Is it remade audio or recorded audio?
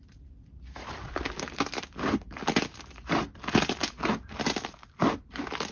recorded